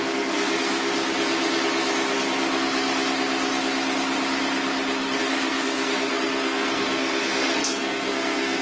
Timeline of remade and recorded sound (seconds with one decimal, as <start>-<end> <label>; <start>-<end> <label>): 0.0-0.9 remade; 0.9-5.2 recorded; 5.2-8.6 remade